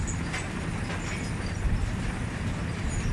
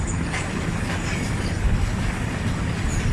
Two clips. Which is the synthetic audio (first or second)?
second